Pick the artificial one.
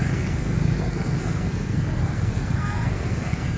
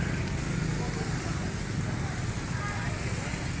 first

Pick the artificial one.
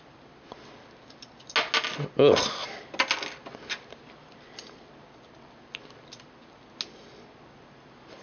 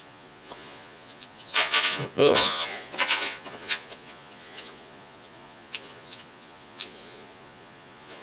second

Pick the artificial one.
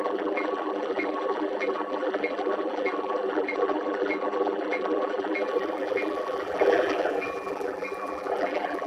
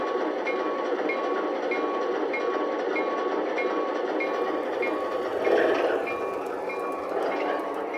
first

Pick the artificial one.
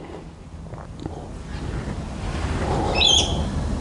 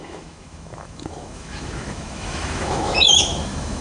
second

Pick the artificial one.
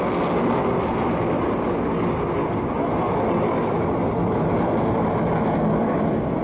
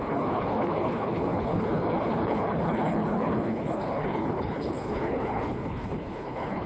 second